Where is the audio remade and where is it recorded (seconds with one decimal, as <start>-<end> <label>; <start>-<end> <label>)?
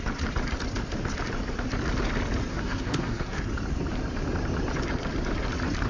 0.0-2.5 recorded; 2.5-3.4 remade; 3.4-5.9 recorded